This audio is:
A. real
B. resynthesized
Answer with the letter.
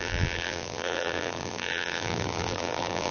B